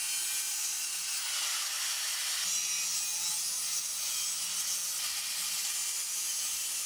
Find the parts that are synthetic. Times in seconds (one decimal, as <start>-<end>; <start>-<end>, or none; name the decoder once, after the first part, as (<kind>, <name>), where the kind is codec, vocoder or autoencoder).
none

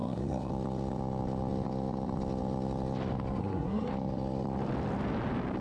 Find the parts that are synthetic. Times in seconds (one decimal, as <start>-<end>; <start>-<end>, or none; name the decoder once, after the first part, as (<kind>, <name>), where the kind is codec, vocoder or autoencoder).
0.0-0.5 (codec, SNAC); 3.4-3.9

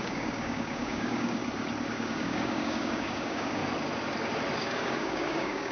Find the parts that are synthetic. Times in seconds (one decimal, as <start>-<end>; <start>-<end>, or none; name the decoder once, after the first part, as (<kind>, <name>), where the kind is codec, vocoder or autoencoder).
0.0-1.4 (codec, DAC); 1.9-3.6; 4.6-5.7

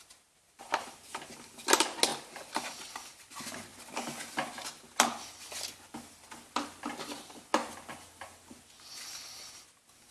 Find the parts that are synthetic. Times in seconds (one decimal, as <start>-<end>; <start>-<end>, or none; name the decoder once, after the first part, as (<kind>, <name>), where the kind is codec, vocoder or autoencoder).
none

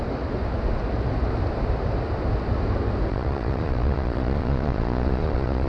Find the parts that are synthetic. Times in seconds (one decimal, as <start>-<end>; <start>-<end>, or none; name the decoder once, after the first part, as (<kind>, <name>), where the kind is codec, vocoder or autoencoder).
3.1-5.7 (vocoder, Vocos)

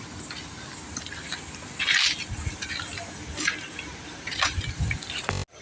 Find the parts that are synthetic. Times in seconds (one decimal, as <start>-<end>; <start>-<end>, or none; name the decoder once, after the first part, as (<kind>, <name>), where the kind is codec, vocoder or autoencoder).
none

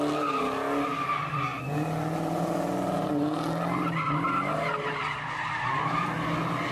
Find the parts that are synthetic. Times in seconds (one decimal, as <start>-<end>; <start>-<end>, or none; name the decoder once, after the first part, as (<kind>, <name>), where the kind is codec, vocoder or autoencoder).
none

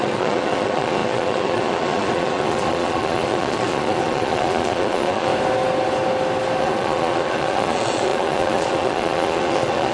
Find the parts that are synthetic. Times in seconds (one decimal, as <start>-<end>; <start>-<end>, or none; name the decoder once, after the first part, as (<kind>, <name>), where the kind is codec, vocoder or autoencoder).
0.0-5.3 (vocoder, Vocos); 6.6-9.9